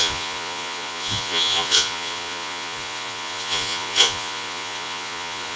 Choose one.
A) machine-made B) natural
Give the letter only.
A